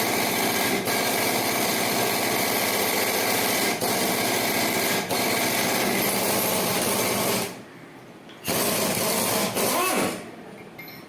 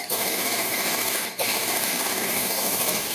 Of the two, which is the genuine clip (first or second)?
first